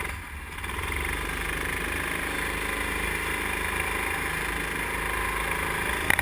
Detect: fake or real real